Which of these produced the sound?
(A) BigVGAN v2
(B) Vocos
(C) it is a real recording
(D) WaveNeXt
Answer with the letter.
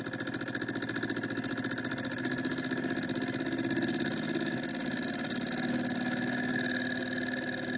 C